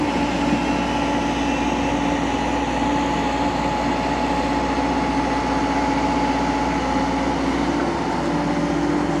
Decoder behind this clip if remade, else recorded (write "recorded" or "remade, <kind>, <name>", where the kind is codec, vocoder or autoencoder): recorded